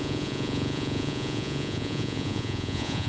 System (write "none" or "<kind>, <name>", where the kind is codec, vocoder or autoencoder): vocoder, Vocos